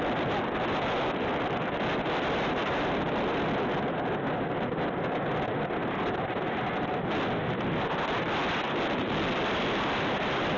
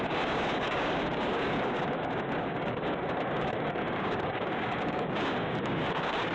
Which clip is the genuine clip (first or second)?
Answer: first